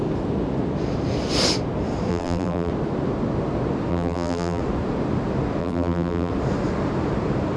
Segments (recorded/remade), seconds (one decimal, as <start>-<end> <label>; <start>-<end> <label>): 0.0-2.1 recorded; 2.1-2.7 remade; 2.7-3.9 recorded; 3.9-4.6 remade; 4.6-5.6 recorded; 5.6-6.3 remade; 6.3-7.6 recorded